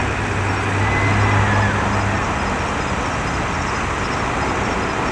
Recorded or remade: recorded